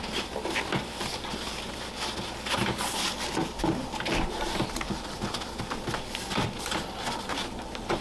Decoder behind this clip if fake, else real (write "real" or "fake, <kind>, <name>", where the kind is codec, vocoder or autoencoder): real